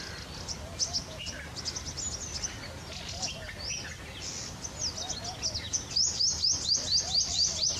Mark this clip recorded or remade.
recorded